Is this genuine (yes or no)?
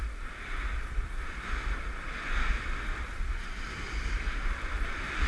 no